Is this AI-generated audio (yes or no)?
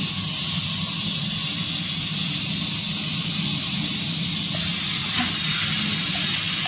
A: no